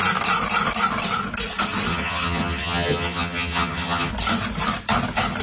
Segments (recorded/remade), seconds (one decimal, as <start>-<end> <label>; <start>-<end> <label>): 0.0-1.9 recorded; 1.9-4.1 remade; 4.1-5.4 recorded